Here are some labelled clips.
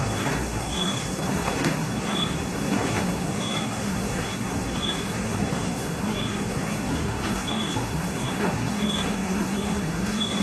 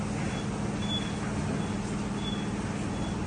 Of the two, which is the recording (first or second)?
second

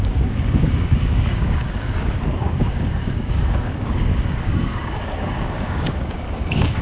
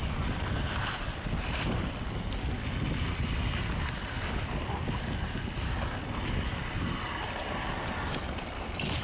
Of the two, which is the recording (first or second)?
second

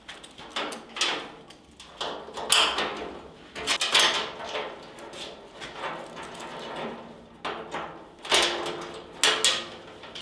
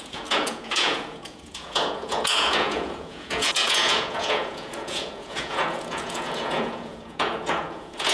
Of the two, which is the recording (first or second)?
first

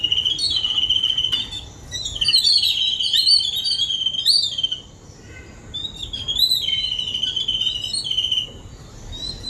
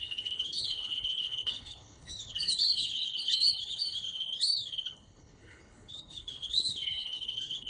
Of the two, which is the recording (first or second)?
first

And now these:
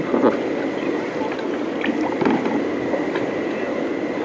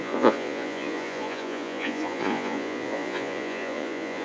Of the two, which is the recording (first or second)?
first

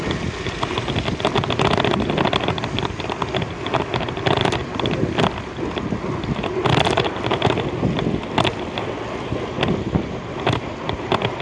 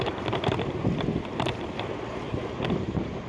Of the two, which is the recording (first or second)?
first